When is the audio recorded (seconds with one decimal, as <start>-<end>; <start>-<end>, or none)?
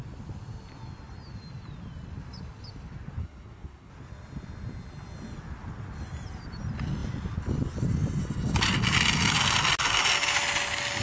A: 0.0-3.2; 3.9-11.0